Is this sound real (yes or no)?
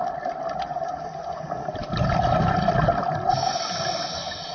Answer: yes